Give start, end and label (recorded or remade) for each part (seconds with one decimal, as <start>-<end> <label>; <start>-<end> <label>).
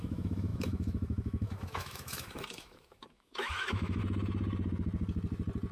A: 0.0-4.0 remade; 4.0-5.7 recorded